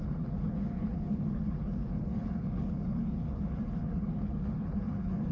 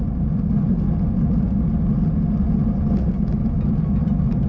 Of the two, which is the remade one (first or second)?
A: first